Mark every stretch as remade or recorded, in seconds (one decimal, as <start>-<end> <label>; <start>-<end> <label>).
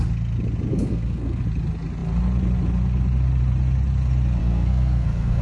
0.0-0.7 recorded; 0.7-1.4 remade; 1.4-4.4 recorded; 4.4-5.4 remade